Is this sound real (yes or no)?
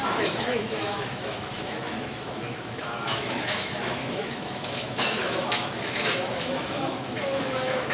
no